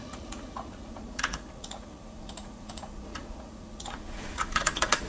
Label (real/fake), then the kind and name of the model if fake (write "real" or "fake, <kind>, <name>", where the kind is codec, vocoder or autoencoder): fake, vocoder, Vocos